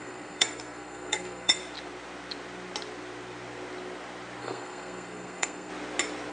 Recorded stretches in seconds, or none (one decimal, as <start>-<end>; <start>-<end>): 1.6-4.4; 5.7-6.3